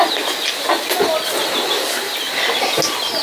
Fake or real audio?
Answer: real